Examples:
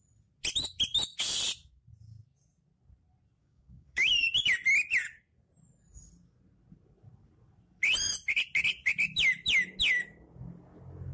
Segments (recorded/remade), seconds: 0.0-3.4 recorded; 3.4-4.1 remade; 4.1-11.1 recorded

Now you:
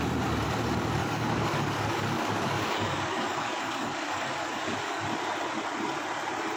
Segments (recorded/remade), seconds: 0.0-1.0 recorded; 1.0-5.0 remade; 5.0-6.6 recorded

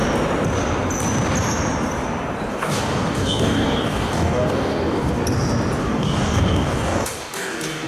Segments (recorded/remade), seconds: 0.0-2.5 recorded; 2.5-5.2 remade; 5.2-5.8 recorded; 5.8-7.9 remade

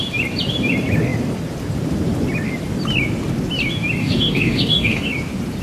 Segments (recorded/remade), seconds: 0.0-4.0 recorded; 4.0-5.1 remade; 5.1-5.6 recorded

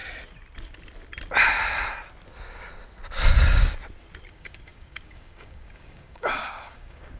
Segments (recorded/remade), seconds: 0.0-4.3 recorded; 4.3-7.2 remade

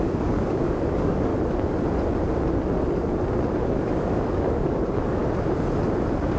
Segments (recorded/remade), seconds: 0.0-1.3 remade; 1.3-3.5 recorded; 3.5-5.2 remade; 5.2-6.4 recorded

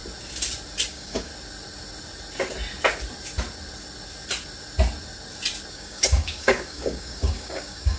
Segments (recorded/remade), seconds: 0.0-0.9 recorded; 0.9-1.3 remade; 1.3-5.7 recorded; 5.7-8.0 remade

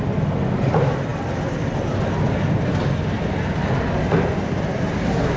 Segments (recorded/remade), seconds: 0.0-5.4 recorded